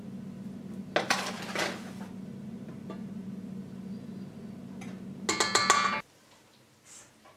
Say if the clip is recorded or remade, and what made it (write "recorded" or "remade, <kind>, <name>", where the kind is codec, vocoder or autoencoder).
recorded